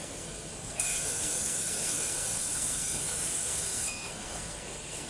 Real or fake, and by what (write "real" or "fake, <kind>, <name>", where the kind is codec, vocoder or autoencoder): fake, codec, SNAC